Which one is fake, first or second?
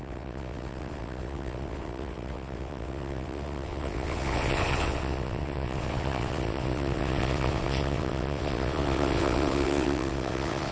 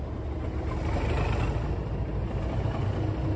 first